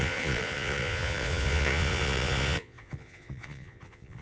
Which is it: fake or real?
fake